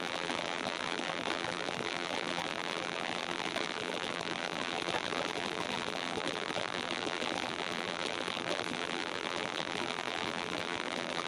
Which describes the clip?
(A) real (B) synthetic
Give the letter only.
B